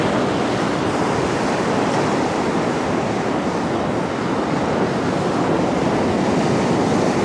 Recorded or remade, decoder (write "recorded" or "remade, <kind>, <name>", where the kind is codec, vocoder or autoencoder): recorded